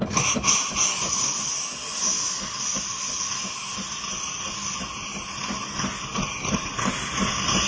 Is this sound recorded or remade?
recorded